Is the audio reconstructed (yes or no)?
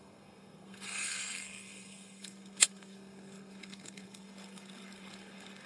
yes